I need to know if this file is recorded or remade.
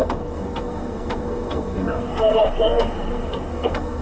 remade